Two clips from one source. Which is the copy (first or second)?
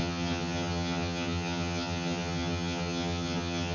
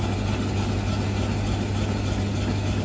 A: first